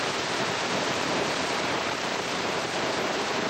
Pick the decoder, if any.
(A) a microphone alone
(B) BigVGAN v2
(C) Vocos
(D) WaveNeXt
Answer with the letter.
B